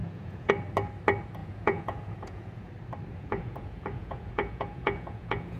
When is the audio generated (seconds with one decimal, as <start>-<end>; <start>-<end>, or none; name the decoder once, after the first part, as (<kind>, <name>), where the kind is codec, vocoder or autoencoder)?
0.0-0.5 (vocoder, Vocos); 1.4-2.7; 3.1-5.6